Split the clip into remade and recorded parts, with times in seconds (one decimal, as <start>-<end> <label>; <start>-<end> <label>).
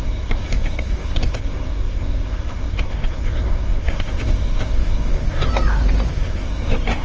0.0-5.5 remade; 5.5-6.1 recorded; 6.1-7.0 remade